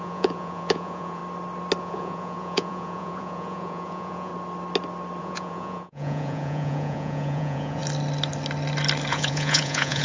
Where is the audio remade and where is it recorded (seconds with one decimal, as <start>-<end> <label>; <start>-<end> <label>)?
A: 0.0-1.2 remade; 1.2-1.8 recorded; 1.8-4.3 remade; 4.3-5.2 recorded; 5.2-7.8 remade; 7.8-9.1 recorded; 9.1-10.0 remade